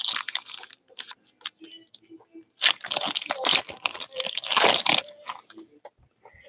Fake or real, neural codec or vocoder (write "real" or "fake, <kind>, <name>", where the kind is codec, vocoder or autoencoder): real